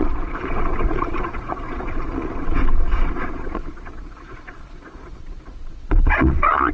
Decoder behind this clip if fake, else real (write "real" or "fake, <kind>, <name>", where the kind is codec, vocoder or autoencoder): fake, vocoder, Vocos